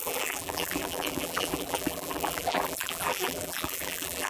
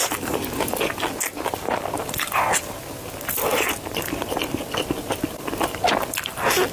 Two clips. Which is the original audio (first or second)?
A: second